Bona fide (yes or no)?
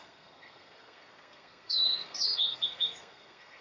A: no